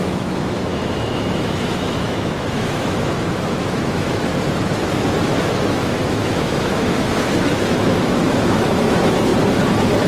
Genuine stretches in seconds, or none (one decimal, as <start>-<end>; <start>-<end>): 4.3-5.6; 9.3-10.1